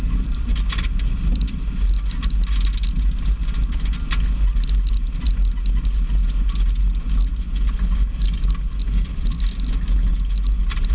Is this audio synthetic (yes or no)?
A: no